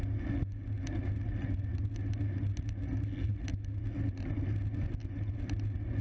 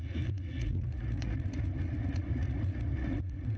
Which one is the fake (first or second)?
second